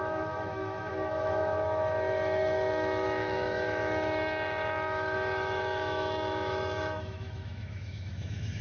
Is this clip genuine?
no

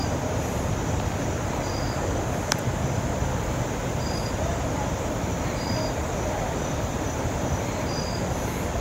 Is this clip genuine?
yes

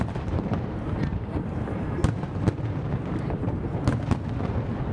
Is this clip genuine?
yes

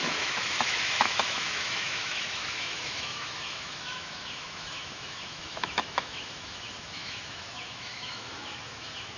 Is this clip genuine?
no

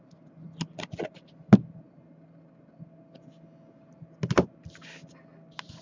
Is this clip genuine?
yes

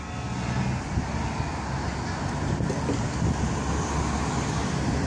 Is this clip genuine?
yes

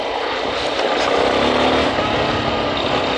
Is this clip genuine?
yes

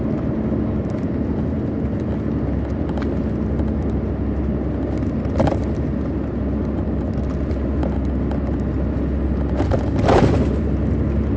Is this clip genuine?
yes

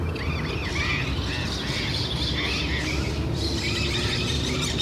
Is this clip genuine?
yes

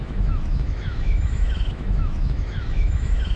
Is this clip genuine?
no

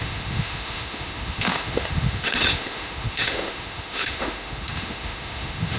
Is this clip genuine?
no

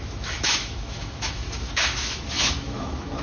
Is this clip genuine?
no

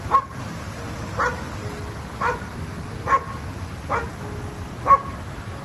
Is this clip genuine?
yes